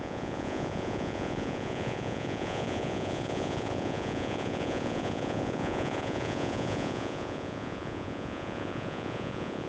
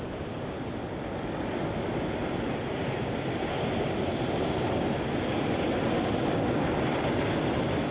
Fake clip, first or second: first